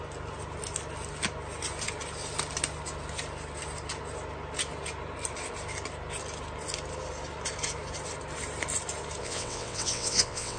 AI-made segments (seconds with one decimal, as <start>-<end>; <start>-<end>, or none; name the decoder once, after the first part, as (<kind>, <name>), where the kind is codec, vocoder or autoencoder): 9.2-10.6 (vocoder, WaveNeXt)

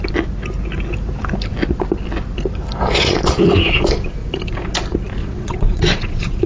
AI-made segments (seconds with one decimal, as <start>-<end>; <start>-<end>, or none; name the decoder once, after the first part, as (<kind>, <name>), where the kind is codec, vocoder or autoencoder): 5.2-6.5 (vocoder, WaveNeXt)